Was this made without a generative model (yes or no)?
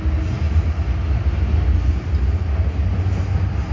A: yes